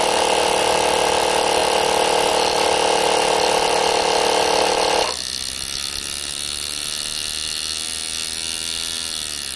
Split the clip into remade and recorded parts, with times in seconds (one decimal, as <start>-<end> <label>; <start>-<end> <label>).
0.0-9.6 recorded